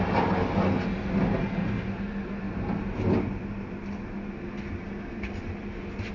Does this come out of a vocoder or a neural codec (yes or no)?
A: no